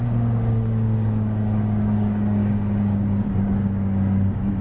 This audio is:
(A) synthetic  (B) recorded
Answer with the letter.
A